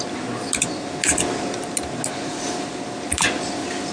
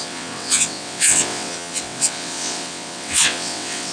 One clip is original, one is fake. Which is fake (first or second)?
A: second